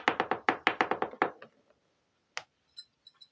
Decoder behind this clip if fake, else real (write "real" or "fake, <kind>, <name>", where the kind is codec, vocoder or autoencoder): real